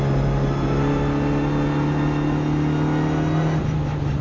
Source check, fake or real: real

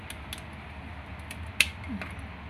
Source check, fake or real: real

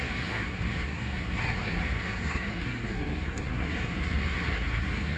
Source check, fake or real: fake